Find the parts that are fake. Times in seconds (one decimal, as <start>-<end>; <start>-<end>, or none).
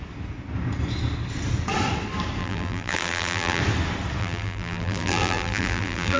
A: 2.4-3.6; 4.2-6.2